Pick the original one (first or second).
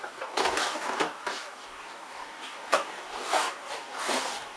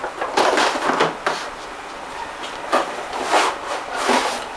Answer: second